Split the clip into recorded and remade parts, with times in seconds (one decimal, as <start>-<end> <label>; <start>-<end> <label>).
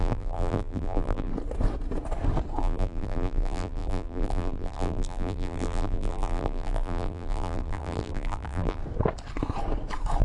0.0-1.3 remade; 1.3-2.6 recorded; 2.6-8.8 remade; 8.8-10.2 recorded